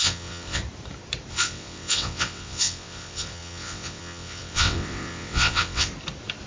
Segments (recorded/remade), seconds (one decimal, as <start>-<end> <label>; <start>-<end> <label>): 0.0-0.6 remade; 0.6-1.3 recorded; 1.3-5.9 remade; 5.9-6.5 recorded